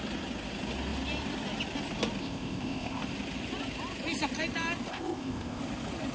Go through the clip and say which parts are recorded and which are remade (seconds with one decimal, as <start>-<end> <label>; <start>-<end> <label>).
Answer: 0.0-2.2 recorded; 2.2-3.0 remade; 3.0-4.9 recorded; 4.9-5.6 remade; 5.6-6.1 recorded